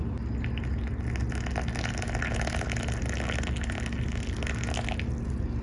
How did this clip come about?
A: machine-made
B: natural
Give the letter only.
B